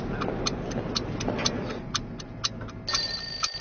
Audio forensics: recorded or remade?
recorded